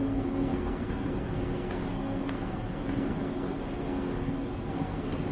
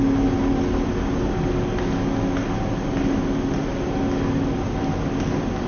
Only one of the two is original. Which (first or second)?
second